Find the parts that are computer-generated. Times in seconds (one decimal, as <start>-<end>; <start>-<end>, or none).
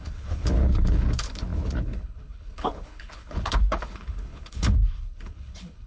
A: 0.0-5.9